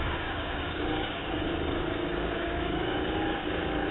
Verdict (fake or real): fake